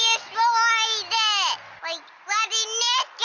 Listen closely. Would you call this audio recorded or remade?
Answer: recorded